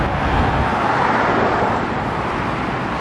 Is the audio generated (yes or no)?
no